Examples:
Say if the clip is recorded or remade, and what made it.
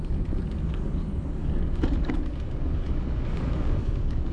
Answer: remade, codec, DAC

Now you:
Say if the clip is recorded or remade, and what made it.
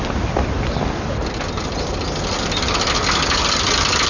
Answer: recorded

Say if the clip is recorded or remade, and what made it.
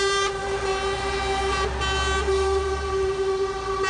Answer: recorded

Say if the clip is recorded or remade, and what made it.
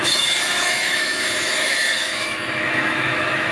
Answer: remade, autoencoder, DAC-VAE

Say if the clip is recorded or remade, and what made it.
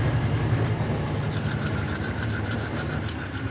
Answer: remade, vocoder, BigVGAN v2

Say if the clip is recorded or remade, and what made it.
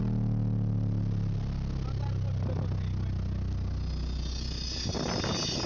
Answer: recorded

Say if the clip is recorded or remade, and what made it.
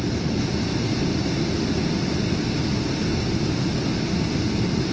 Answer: recorded